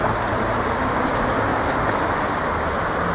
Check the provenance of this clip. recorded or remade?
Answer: recorded